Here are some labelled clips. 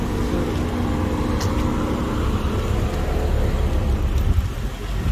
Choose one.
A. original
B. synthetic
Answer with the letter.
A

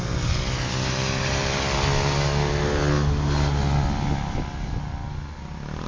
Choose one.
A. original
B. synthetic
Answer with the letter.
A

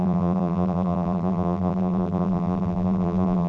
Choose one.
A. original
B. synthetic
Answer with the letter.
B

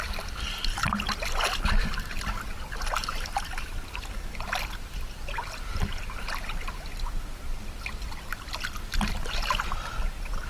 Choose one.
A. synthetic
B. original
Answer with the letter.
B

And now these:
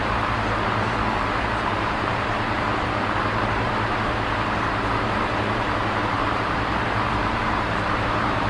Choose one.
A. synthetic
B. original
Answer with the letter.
A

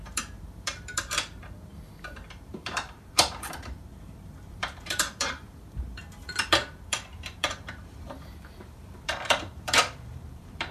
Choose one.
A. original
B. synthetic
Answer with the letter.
B